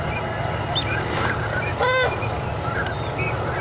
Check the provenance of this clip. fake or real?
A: real